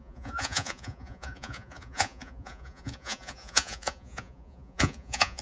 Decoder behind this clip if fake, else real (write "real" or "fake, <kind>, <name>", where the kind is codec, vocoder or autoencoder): fake, vocoder, Vocos